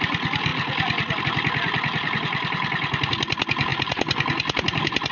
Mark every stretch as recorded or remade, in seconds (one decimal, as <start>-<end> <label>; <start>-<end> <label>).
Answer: 0.0-5.1 recorded